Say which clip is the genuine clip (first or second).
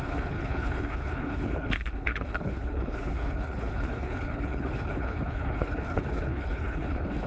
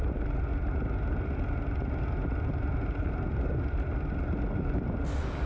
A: second